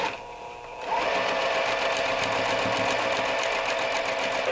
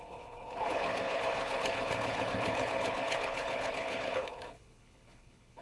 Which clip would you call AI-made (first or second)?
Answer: second